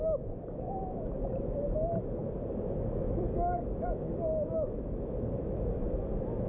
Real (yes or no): no